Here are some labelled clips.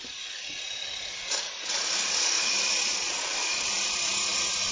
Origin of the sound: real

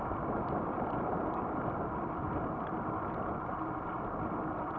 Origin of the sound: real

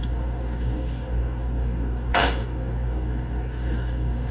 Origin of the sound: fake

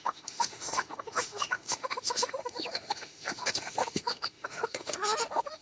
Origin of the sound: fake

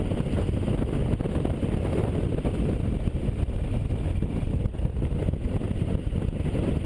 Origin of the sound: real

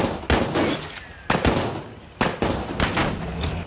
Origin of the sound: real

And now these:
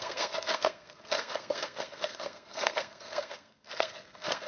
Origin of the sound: fake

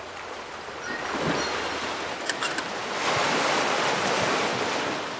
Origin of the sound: real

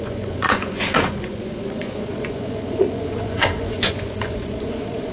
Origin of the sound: fake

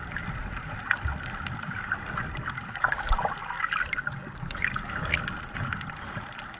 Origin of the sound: real